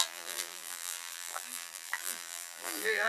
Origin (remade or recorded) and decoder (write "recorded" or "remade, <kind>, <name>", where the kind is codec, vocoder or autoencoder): remade, vocoder, BigVGAN v2